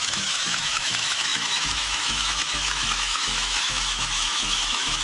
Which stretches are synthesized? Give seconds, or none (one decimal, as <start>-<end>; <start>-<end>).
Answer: 0.0-5.0